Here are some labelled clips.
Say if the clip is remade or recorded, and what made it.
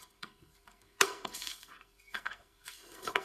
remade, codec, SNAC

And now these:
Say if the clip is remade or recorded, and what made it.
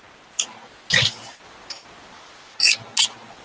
recorded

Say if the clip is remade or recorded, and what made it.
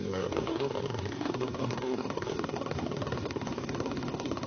remade, codec, SNAC